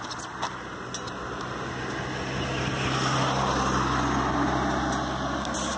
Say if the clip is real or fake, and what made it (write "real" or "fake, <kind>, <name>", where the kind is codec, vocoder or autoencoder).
real